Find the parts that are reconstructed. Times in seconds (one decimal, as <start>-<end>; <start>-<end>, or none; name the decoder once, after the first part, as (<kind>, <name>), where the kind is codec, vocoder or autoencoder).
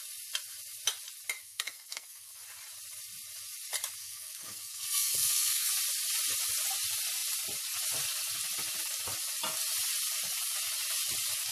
1.4-2.4 (codec, SNAC); 4.0-5.7